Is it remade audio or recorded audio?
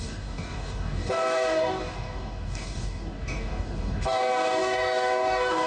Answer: remade